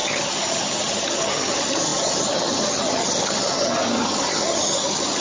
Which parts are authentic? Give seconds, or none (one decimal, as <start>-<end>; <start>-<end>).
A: none